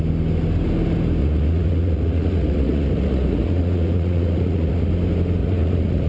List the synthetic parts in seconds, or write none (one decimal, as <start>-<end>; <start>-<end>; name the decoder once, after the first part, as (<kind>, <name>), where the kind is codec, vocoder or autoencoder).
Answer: 1.2-4.9 (vocoder, Vocos); 5.4-6.1